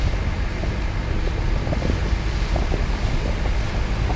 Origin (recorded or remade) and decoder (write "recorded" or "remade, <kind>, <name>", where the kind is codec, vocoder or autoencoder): recorded